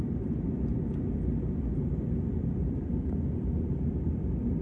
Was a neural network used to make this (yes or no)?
no